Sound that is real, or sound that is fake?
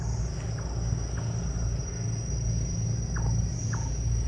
real